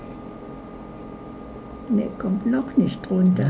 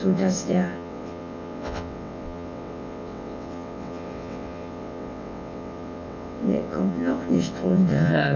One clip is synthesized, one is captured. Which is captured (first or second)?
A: first